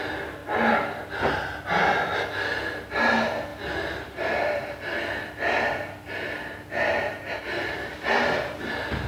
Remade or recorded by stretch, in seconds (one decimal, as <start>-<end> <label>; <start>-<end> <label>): 0.0-0.4 recorded; 0.4-1.2 remade; 1.2-3.5 recorded; 3.5-8.3 remade; 8.3-9.1 recorded